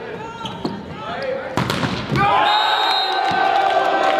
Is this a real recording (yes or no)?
yes